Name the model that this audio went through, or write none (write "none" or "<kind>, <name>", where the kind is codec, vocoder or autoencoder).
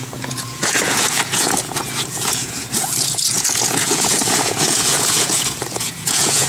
vocoder, Vocos